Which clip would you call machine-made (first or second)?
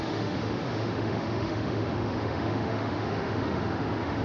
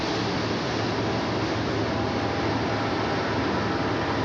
first